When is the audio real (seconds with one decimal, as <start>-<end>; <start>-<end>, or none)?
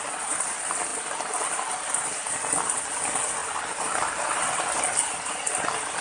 0.0-6.0